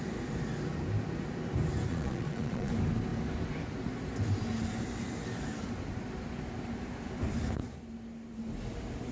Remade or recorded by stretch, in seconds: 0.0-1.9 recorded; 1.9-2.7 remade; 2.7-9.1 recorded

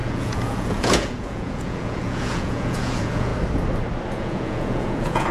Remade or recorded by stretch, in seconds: 0.0-3.3 remade; 3.3-4.2 recorded; 4.2-5.3 remade

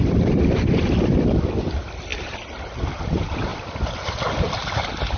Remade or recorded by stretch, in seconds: 0.0-5.2 recorded

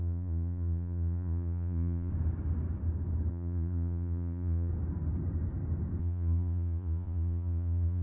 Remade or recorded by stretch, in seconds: 0.0-2.1 remade; 2.1-3.3 recorded; 3.3-4.7 remade; 4.7-6.0 recorded; 6.0-8.0 remade

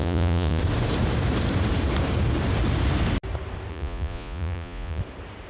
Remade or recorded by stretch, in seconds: 0.0-0.6 remade; 0.6-3.7 recorded; 3.7-5.0 remade; 5.0-5.5 recorded

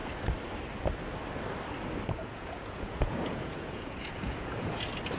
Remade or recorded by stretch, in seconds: 0.0-2.2 recorded; 2.2-4.8 remade; 4.8-5.2 recorded

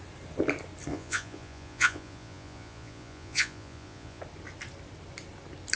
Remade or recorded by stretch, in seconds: 0.0-0.9 recorded; 0.9-4.2 remade; 4.2-5.8 recorded

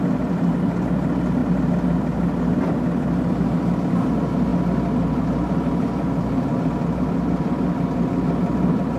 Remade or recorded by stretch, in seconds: 0.0-9.0 recorded